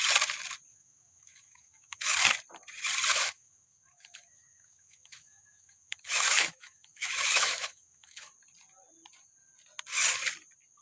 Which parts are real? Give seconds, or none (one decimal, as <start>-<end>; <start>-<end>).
0.0-0.7; 2.1-3.1; 8.3-10.8